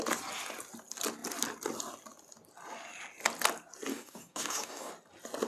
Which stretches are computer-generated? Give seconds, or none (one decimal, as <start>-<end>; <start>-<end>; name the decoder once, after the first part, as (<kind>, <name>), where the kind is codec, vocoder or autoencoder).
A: 3.9-4.9 (codec, DAC)